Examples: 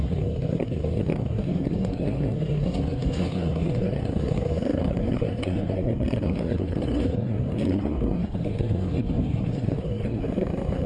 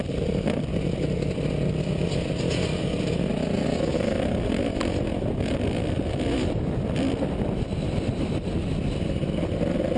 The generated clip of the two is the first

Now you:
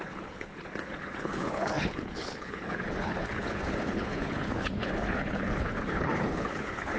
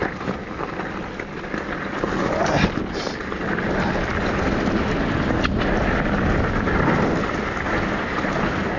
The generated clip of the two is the first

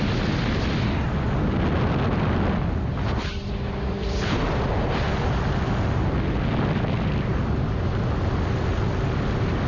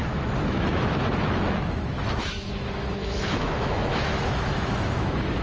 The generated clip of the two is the second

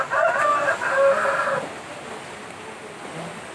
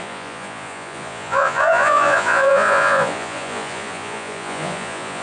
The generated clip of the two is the second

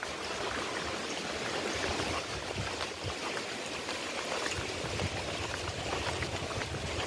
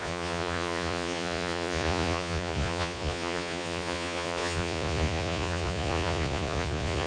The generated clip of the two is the second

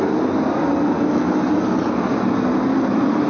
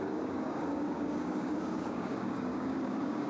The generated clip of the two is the second